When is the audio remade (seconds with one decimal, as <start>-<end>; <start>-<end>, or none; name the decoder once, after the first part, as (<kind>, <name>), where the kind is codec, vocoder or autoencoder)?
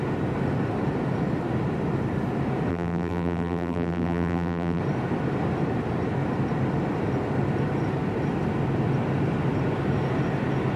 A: 2.7-4.8 (vocoder, BigVGAN v2)